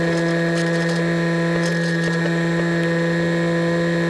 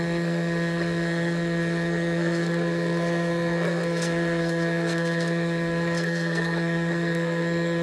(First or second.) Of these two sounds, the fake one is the second